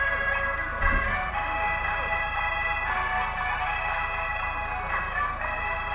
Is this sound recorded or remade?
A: recorded